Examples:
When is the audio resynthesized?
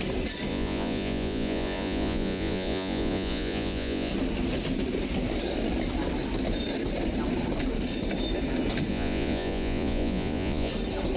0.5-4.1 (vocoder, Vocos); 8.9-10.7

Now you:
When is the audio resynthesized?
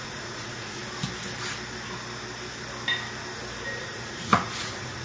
0.0-0.8 (vocoder, Vocos); 3.8-5.0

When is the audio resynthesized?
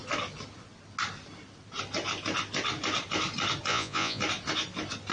3.7-4.2 (vocoder, Vocos)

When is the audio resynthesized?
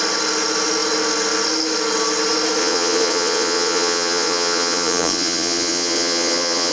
2.6-6.7 (vocoder, Vocos)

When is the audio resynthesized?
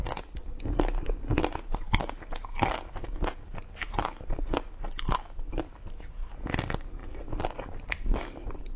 none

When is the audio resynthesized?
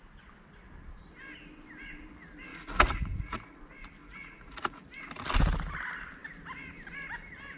2.5-3.6 (vocoder, Vocos); 4.0-4.8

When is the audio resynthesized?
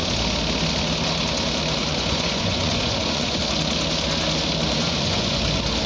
1.8-3.4 (vocoder, Vocos); 4.8-5.4